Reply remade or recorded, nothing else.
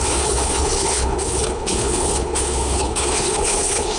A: remade